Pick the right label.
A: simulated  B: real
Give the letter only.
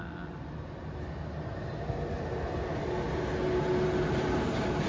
B